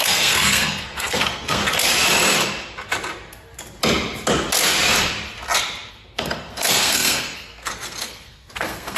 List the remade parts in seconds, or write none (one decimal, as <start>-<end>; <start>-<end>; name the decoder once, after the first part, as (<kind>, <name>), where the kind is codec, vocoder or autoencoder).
0.0-1.6 (codec, SNAC); 5.9-9.0